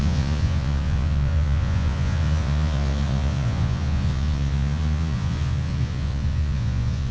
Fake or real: fake